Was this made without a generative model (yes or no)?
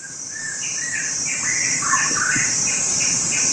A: no